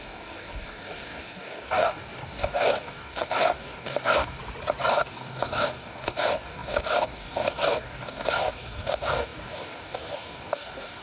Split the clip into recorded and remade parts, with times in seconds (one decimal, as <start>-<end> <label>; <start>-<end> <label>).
0.0-4.4 remade; 4.4-4.9 recorded; 4.9-11.0 remade

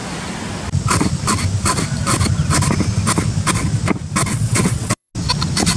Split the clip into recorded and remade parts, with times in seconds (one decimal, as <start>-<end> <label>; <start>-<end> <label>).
0.0-4.3 recorded; 4.3-5.1 remade; 5.1-5.8 recorded

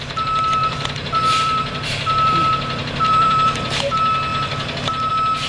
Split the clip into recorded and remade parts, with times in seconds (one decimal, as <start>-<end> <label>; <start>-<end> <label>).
0.0-0.6 recorded; 0.6-3.9 remade; 3.9-4.3 recorded; 4.3-5.1 remade; 5.1-5.5 recorded

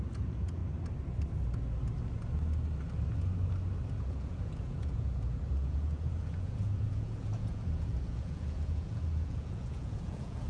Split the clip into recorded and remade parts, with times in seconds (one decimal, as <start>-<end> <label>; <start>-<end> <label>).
0.0-0.6 remade; 0.6-4.0 recorded; 4.0-10.5 remade

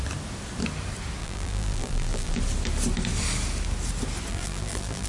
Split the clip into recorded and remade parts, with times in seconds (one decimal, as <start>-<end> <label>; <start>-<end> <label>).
0.0-1.2 recorded; 1.2-2.4 remade; 2.4-4.3 recorded; 4.3-5.1 remade

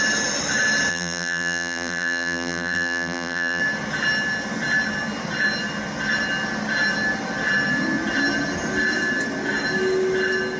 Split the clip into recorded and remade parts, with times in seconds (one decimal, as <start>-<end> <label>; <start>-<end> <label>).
0.0-0.9 recorded; 0.9-3.6 remade; 3.6-10.6 recorded

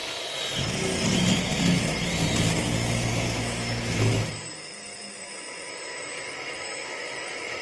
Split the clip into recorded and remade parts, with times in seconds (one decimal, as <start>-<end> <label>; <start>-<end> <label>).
0.0-3.1 recorded; 3.1-7.6 remade

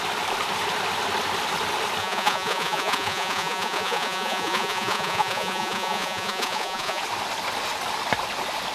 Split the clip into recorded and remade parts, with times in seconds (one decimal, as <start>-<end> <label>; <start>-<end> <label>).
0.0-2.0 recorded; 2.0-7.0 remade; 7.0-8.7 recorded